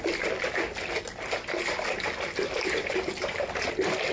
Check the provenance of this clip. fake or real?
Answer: real